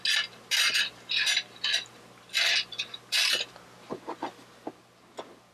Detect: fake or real real